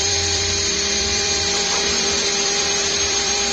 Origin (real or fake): fake